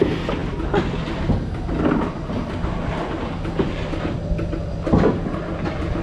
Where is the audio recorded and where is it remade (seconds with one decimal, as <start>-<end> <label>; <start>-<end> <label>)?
0.0-6.0 recorded